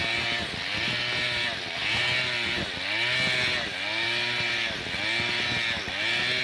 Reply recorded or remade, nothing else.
recorded